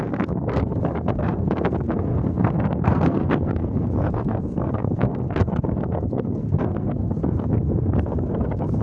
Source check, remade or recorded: remade